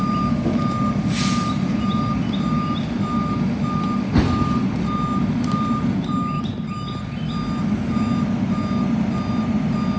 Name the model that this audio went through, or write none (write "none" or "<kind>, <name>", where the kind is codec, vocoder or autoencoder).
none